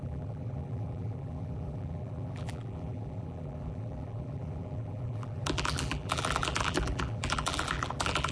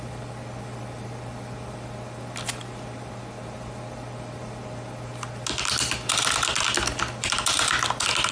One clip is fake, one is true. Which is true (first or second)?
second